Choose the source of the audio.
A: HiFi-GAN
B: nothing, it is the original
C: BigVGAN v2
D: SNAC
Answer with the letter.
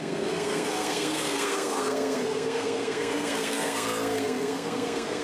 D